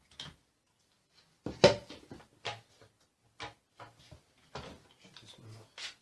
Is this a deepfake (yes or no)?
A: no